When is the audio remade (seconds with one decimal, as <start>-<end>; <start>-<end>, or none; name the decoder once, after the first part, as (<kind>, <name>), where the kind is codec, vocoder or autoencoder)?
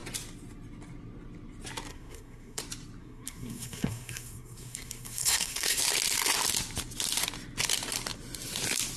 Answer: 1.9-2.6 (codec, SNAC); 3.0-5.8